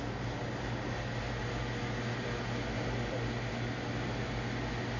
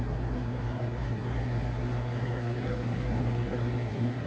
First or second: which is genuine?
first